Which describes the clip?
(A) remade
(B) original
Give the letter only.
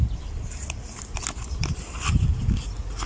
B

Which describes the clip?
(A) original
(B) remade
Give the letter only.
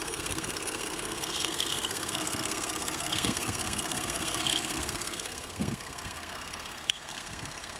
B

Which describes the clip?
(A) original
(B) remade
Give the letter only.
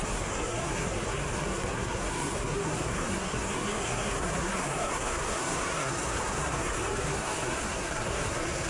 B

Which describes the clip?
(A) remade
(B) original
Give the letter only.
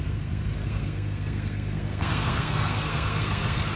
A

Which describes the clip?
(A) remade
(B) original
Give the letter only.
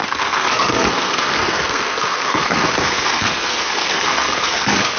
A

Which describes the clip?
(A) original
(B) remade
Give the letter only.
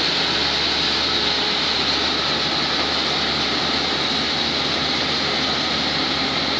A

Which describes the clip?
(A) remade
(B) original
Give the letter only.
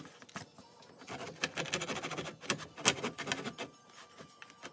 B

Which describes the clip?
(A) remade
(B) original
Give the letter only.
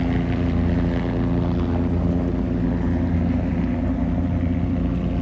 B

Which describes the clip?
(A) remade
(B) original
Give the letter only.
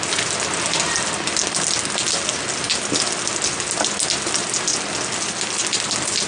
B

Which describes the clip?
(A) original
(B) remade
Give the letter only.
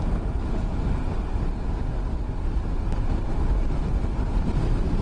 A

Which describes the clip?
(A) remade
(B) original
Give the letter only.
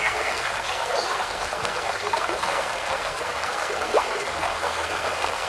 A